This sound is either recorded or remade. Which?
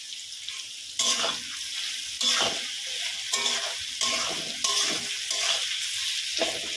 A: recorded